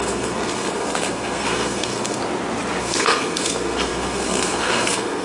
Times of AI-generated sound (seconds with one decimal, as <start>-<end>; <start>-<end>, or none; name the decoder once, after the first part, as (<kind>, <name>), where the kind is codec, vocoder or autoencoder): 0.0-2.2 (codec, SNAC); 2.8-5.2